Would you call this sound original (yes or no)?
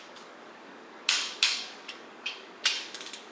no